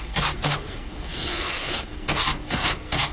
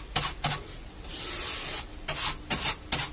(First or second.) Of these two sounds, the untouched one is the second